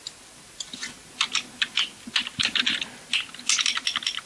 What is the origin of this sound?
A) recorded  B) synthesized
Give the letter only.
A